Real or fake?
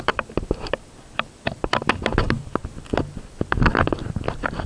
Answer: fake